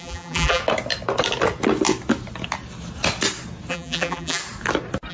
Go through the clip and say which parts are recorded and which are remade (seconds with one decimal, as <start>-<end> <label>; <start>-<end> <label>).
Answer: 0.0-0.6 remade; 0.6-3.7 recorded; 3.7-4.4 remade; 4.4-5.1 recorded